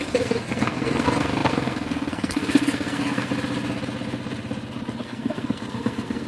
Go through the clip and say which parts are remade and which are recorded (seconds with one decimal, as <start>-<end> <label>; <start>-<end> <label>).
0.0-3.3 remade; 3.3-5.0 recorded; 5.0-6.3 remade